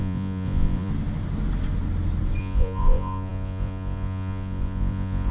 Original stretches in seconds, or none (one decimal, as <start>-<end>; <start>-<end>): 0.9-2.4